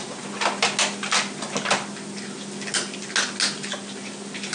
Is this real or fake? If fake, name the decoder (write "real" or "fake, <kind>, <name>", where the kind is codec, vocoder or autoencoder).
real